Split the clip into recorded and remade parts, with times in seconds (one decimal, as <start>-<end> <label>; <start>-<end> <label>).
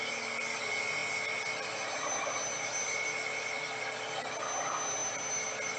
0.0-5.0 recorded; 5.0-5.8 remade